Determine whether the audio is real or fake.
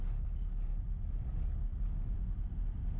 real